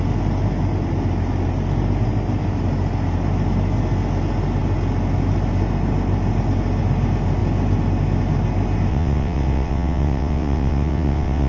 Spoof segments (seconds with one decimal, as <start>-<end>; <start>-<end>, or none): 8.9-11.5